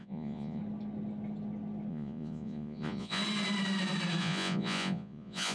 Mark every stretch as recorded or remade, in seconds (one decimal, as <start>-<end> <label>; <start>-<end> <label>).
0.0-0.6 remade; 0.6-1.9 recorded; 1.9-3.2 remade; 3.2-4.2 recorded; 4.2-5.5 remade